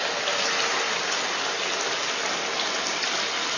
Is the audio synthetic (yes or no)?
no